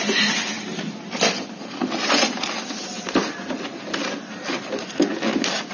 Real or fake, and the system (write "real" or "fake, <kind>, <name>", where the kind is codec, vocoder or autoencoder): real